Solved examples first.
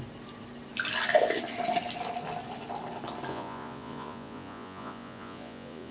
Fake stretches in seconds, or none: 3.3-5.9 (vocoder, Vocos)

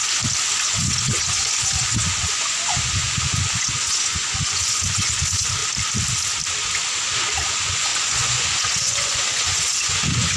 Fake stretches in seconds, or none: 0.6-5.6 (vocoder, Vocos); 7.5-10.4

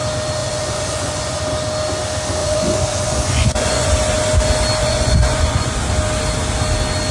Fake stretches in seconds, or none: 0.4-1.4 (vocoder, Vocos); 2.4-3.9; 4.8-5.7

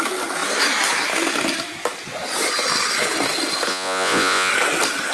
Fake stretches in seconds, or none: 3.7-4.5 (vocoder, Vocos)

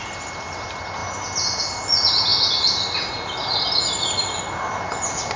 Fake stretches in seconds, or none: none

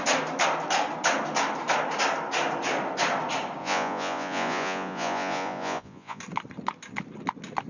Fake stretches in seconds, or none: 3.6-6.2 (vocoder, Vocos)

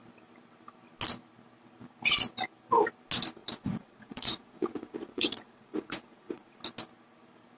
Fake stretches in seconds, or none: 3.4-6.6 (vocoder, Vocos)